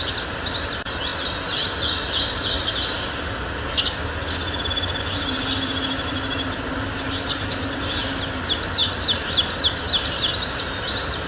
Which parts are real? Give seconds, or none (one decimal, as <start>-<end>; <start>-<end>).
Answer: 0.0-11.3